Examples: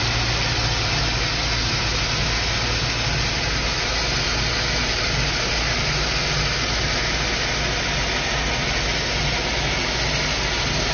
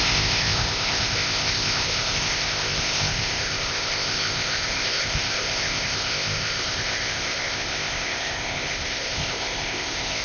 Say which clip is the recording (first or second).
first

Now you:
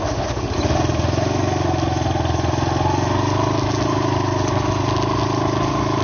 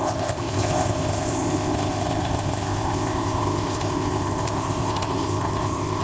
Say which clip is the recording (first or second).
first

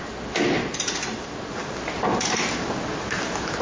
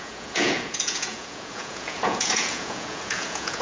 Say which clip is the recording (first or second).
first